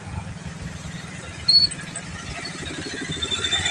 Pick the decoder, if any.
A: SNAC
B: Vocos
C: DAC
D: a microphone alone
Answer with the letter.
D